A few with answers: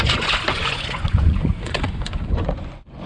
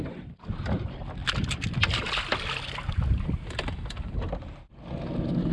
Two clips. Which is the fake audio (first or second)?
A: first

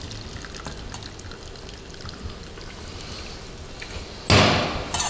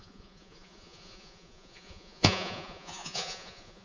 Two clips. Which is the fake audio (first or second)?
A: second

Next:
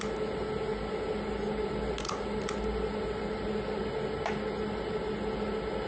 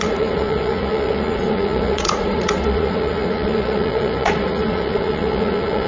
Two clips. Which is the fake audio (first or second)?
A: second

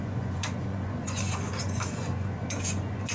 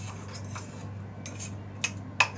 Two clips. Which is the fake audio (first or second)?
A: first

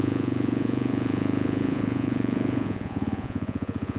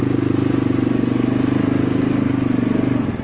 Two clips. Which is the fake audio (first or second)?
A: first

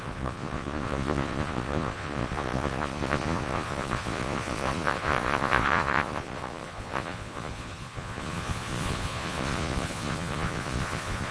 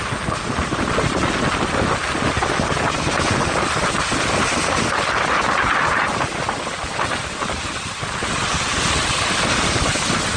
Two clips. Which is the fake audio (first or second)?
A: first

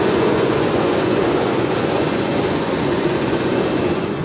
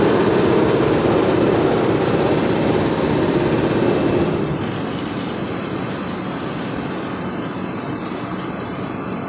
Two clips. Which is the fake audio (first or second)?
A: first